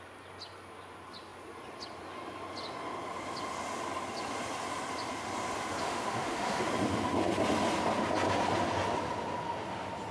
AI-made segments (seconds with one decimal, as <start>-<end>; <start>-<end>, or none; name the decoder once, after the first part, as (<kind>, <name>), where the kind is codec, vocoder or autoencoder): 5.8-6.6 (autoencoder, DAC-VAE)